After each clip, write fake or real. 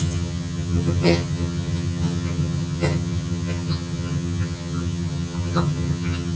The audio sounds fake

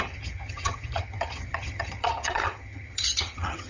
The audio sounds fake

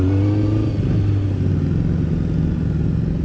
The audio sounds real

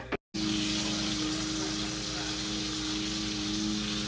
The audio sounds real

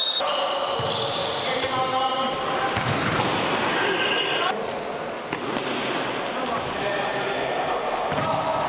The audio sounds real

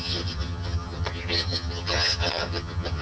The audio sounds fake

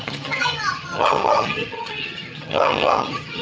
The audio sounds fake